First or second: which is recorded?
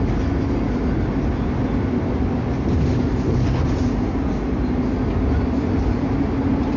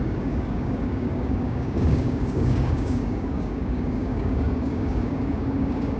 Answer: first